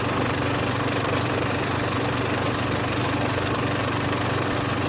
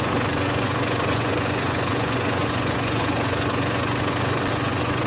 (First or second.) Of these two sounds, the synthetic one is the second